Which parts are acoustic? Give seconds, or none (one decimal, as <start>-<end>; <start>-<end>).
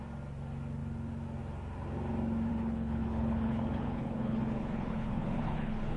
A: 0.0-2.5